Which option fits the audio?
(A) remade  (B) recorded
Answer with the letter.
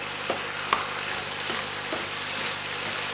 B